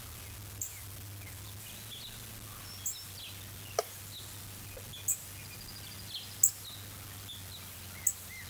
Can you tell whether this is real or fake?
real